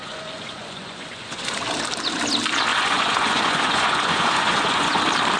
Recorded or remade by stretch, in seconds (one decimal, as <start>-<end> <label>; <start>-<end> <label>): 0.0-1.5 remade; 1.5-2.7 recorded; 2.7-5.0 remade; 5.0-5.4 recorded